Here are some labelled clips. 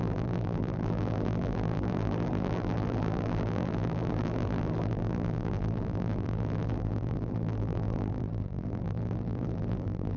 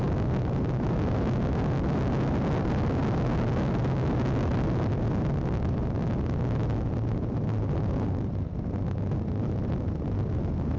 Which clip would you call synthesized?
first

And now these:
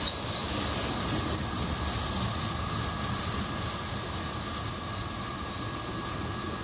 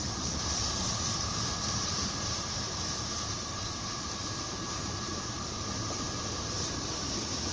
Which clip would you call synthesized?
second